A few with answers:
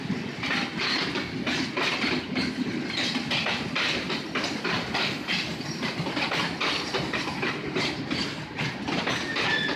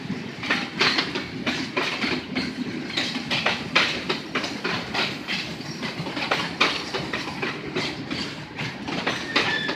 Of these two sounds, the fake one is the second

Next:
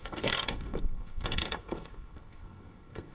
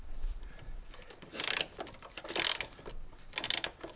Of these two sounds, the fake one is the first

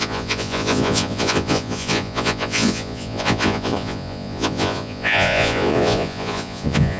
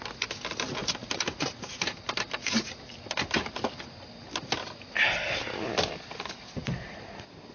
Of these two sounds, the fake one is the first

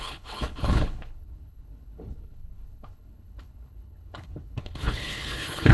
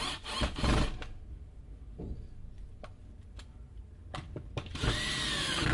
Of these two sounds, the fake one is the first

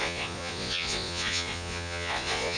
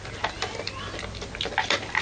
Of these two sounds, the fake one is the first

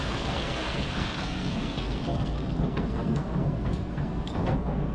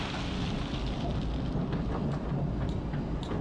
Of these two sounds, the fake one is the first